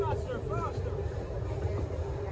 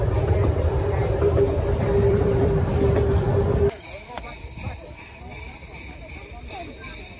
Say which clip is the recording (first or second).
first